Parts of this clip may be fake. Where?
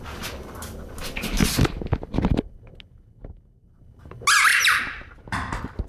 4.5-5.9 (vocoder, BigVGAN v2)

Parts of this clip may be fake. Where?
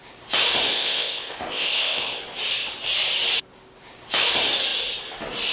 0.7-2.2 (codec, ZipCodec)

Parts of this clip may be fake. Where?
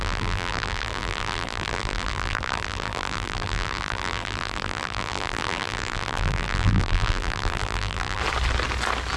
0.0-8.2 (vocoder, BigVGAN v2)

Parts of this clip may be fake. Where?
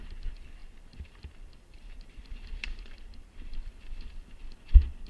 0.6-3.7 (vocoder, BigVGAN v2)